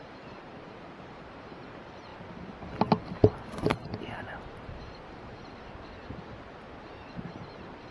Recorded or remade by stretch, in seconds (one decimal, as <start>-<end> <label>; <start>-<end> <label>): 0.0-2.1 remade; 2.1-4.4 recorded; 4.4-5.3 remade; 5.3-6.6 recorded; 6.6-7.9 remade

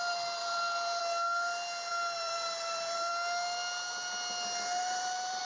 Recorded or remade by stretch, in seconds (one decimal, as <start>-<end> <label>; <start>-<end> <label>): 0.0-0.4 recorded; 0.4-1.0 remade; 1.0-1.9 recorded; 1.9-3.1 remade; 3.1-4.8 recorded; 4.8-5.4 remade

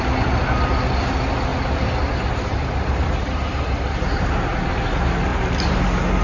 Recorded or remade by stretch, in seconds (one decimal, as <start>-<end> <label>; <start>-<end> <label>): 0.0-1.5 recorded; 1.5-4.7 remade; 4.7-5.3 recorded; 5.3-5.8 remade; 5.8-6.2 recorded

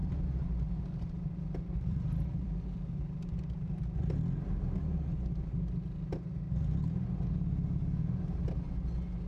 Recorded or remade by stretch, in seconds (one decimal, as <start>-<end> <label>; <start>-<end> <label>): 0.0-3.7 remade; 3.7-9.3 recorded

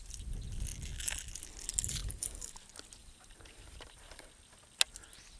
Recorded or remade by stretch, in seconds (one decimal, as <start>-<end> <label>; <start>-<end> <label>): 0.0-2.0 recorded; 2.0-2.5 remade; 2.5-3.0 recorded; 3.0-4.3 remade; 4.3-5.4 recorded

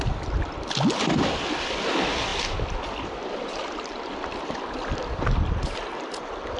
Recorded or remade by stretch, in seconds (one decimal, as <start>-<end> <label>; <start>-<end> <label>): 0.0-2.3 recorded; 2.3-6.6 remade